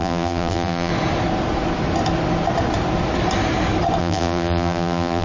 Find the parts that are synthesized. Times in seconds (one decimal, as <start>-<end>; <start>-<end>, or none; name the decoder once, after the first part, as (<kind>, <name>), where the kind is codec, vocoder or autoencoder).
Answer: 0.0-0.9 (vocoder, BigVGAN v2); 4.0-5.2